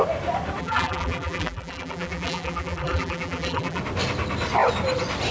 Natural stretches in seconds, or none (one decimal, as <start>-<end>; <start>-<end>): 0.0-0.6; 3.8-5.3